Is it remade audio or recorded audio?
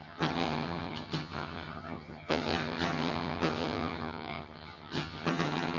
remade